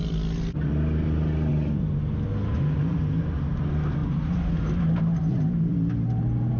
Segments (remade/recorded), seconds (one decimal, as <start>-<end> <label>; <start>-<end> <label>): 0.0-6.6 recorded